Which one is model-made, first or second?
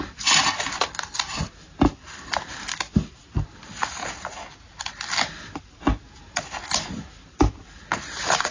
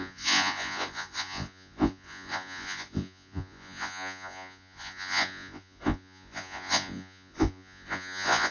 second